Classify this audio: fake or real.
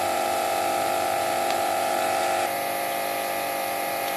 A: fake